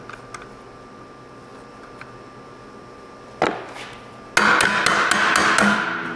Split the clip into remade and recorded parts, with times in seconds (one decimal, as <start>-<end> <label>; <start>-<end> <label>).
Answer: 0.0-6.2 recorded